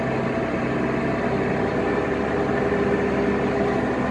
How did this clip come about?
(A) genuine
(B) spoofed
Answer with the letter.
A